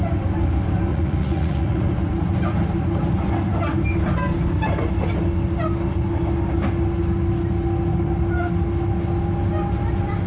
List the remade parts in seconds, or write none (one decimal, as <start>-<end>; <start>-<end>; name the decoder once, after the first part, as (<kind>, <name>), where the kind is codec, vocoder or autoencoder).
0.9-1.9 (vocoder, Vocos)